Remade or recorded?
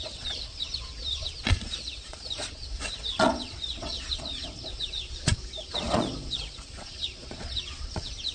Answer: remade